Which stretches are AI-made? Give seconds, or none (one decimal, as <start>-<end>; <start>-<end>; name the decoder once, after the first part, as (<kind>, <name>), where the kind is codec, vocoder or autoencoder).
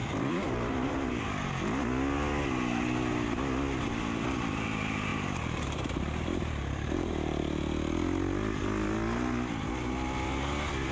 0.0-1.2 (vocoder, BigVGAN v2); 5.1-7.4